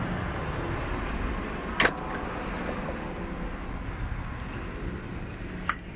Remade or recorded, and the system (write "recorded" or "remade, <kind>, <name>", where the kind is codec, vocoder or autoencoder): recorded